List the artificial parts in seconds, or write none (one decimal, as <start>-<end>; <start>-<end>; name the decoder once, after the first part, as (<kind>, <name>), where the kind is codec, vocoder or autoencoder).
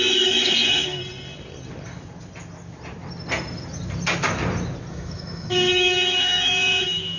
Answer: 0.0-1.0 (autoencoder, DAC-VAE); 4.9-7.2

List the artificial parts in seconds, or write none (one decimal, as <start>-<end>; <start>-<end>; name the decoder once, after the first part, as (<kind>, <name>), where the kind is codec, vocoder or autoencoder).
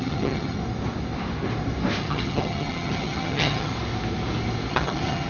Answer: 0.0-0.6 (vocoder, HiFi-GAN); 2.0-3.7; 4.7-5.3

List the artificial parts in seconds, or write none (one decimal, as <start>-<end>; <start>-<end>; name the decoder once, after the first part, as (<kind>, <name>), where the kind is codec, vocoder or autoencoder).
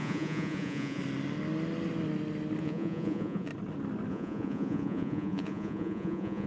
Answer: 0.0-1.0 (vocoder, Vocos); 2.6-3.5; 4.1-6.5